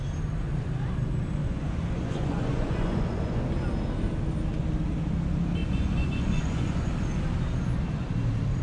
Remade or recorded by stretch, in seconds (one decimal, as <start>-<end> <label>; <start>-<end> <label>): 0.0-1.4 recorded; 1.4-3.4 remade; 3.4-5.6 recorded; 5.6-6.9 remade; 6.9-8.6 recorded